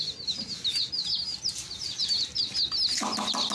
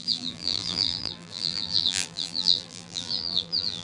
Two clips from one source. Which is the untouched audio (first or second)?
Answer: first